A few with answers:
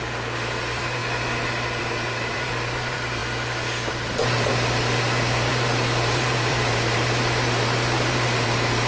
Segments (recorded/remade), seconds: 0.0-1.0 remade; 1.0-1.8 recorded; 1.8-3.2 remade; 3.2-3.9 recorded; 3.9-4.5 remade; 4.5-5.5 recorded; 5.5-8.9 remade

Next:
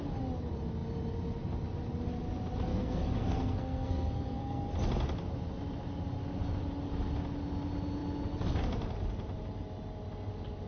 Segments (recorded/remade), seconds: 0.0-2.7 recorded; 2.7-4.7 remade; 4.7-10.7 recorded

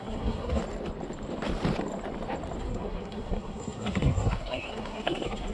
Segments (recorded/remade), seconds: 0.0-0.6 remade; 0.6-2.6 recorded; 2.6-5.5 remade

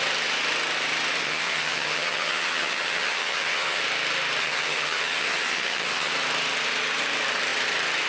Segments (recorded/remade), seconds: 0.0-1.2 recorded; 1.2-3.8 remade; 3.8-4.4 recorded; 4.4-6.1 remade; 6.1-8.1 recorded

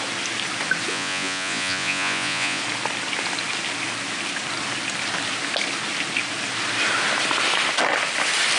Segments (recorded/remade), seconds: 0.0-0.9 recorded; 0.9-2.6 remade; 2.6-8.6 recorded

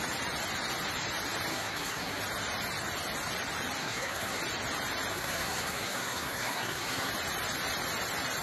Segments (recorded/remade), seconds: 0.0-1.5 recorded; 1.5-2.2 remade; 2.2-3.8 recorded; 3.8-4.4 remade; 4.4-5.1 recorded; 5.1-7.1 remade; 7.1-8.4 recorded